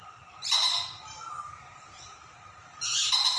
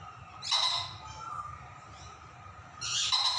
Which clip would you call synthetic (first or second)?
first